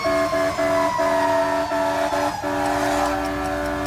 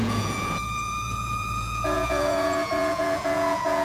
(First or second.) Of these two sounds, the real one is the first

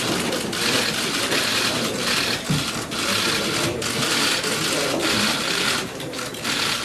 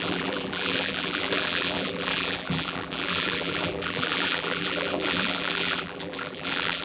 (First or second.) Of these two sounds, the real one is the first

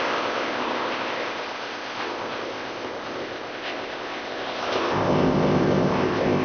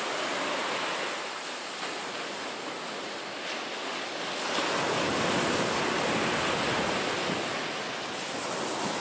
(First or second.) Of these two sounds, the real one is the second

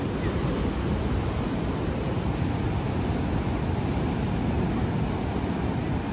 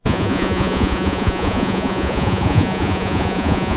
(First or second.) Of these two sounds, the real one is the first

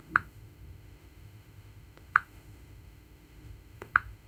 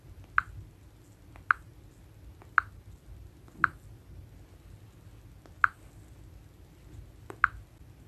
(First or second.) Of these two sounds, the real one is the second